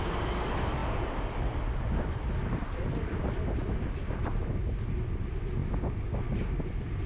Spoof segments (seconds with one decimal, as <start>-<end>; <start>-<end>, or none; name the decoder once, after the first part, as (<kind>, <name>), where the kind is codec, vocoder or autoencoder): none